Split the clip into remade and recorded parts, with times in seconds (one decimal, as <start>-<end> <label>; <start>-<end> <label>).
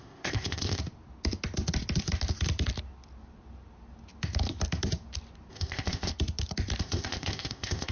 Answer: 0.0-0.8 remade; 0.8-5.5 recorded; 5.5-6.1 remade; 6.1-6.8 recorded; 6.8-7.9 remade